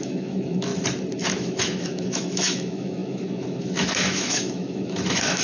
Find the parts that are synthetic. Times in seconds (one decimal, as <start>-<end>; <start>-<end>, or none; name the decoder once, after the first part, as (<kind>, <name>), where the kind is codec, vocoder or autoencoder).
0.0-0.7 (autoencoder, DAC-VAE); 1.3-5.4